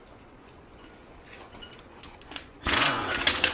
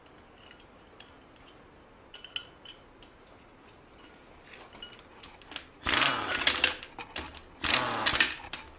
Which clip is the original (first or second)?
second